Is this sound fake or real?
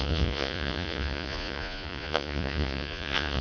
fake